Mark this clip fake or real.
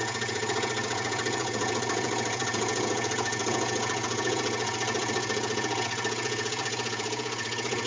fake